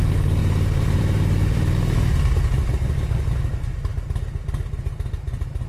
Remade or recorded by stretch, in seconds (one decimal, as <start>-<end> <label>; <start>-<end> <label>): 0.0-0.4 recorded; 0.4-3.0 remade; 3.0-5.7 recorded

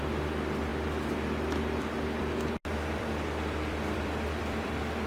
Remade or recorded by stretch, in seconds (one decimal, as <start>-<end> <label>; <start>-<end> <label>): 0.0-2.7 recorded; 2.7-5.1 remade

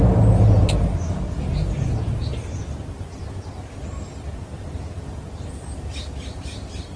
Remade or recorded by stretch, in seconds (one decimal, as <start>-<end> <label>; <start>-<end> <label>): 0.0-7.0 recorded

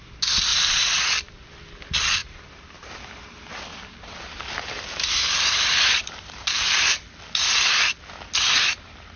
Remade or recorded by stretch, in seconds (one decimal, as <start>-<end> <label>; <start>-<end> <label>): 0.0-0.5 recorded; 0.5-1.0 remade; 1.0-2.2 recorded; 2.2-2.9 remade; 2.9-3.7 recorded; 3.7-7.0 remade; 7.0-9.2 recorded

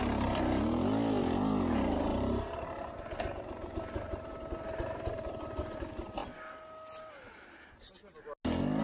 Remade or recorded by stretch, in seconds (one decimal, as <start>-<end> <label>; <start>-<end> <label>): 0.0-2.1 recorded; 2.1-5.8 remade; 5.8-8.8 recorded

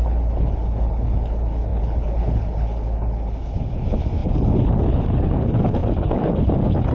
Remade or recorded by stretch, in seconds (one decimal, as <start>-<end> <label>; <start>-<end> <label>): 0.0-6.9 remade